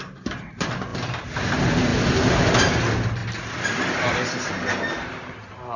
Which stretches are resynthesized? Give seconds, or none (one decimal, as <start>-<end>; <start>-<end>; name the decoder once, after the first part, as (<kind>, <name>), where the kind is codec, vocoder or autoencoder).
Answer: none